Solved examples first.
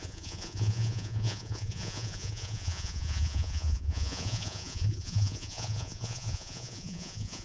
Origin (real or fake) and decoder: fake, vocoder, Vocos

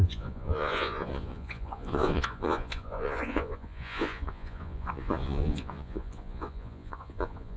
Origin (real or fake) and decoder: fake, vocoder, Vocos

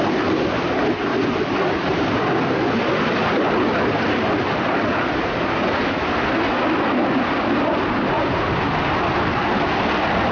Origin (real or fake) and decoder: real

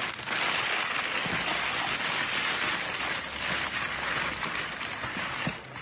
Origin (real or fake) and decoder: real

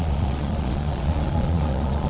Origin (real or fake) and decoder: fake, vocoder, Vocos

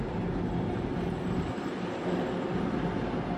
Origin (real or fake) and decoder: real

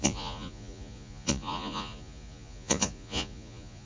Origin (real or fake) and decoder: fake, vocoder, Vocos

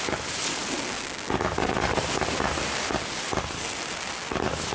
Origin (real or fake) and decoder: real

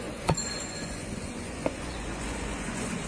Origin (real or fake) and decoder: fake, vocoder, Vocos